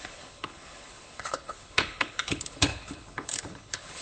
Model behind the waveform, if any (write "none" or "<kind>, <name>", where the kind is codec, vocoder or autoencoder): codec, HILCodec